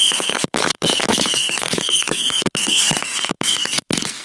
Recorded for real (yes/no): no